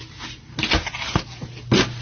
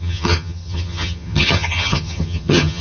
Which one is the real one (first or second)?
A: first